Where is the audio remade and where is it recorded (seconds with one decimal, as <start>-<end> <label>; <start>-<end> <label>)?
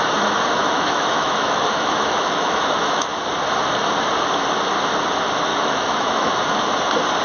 0.0-0.6 recorded; 0.6-3.2 remade; 3.2-5.5 recorded; 5.5-6.3 remade; 6.3-7.2 recorded